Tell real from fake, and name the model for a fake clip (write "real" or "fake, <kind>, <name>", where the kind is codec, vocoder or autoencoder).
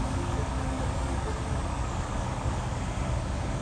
fake, codec, DAC